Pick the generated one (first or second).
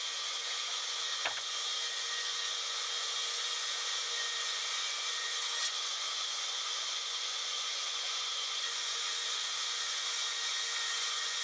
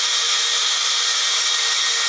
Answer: first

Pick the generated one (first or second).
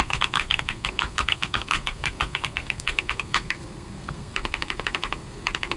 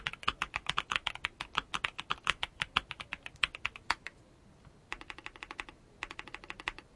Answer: first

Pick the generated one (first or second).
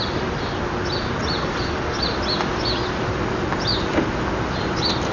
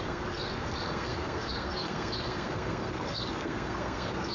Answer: second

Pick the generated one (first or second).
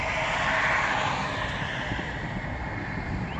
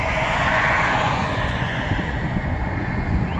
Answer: second